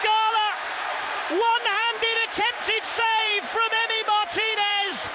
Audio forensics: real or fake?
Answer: fake